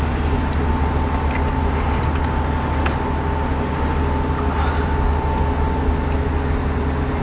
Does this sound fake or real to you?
real